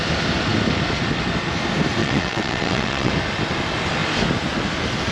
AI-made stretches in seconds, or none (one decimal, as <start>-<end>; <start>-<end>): 2.0-3.1